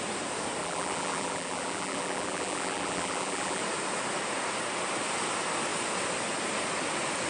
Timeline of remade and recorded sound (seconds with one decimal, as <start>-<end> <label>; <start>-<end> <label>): 0.0-0.6 recorded; 0.6-3.6 remade; 3.6-7.3 recorded